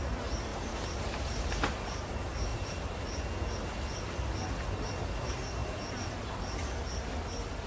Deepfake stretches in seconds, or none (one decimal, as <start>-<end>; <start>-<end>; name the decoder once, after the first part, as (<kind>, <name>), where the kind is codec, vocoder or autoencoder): 0.5-1.8 (vocoder, BigVGAN v2); 2.5-3.3; 5.6-6.3